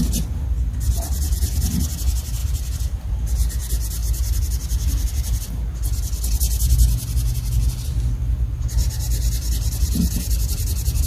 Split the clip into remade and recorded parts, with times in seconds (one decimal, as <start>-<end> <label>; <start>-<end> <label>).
0.0-2.4 recorded; 2.4-3.1 remade; 3.1-4.0 recorded; 4.0-5.1 remade; 5.1-11.1 recorded